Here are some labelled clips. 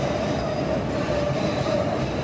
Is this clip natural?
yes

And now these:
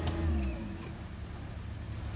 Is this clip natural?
yes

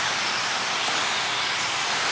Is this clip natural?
yes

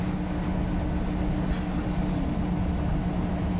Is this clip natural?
yes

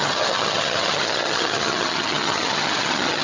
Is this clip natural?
no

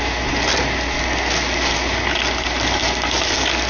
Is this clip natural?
yes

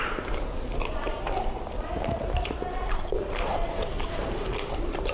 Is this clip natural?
yes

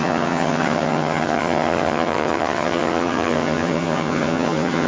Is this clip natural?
no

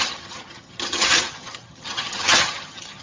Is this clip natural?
no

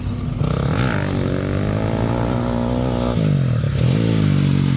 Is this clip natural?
yes